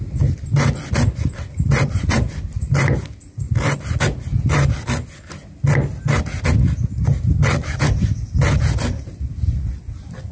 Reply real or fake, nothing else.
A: real